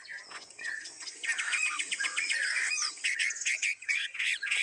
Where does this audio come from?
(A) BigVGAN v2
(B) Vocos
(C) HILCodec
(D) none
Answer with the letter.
B